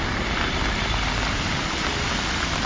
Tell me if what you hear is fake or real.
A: real